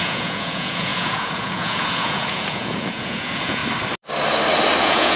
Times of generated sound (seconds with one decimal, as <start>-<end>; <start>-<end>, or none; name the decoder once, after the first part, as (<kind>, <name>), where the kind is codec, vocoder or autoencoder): 0.0-3.6 (vocoder, Vocos); 4.8-5.2